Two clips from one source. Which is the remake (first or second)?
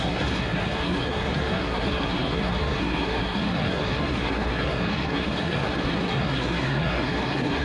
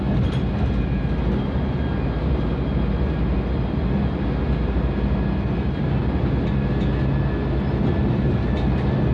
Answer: first